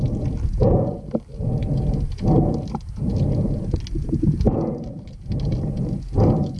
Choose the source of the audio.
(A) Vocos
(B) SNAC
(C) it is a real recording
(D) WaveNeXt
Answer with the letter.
C